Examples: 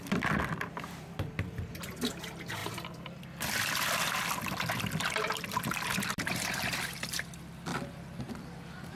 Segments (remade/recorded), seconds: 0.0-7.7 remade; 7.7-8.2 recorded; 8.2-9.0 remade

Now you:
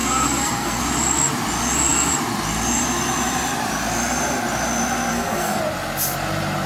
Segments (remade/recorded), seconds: 0.0-0.8 remade; 0.8-5.1 recorded; 5.1-5.6 remade; 5.6-6.7 recorded

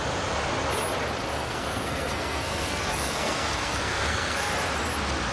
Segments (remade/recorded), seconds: 0.0-1.3 recorded; 1.3-4.5 remade; 4.5-5.3 recorded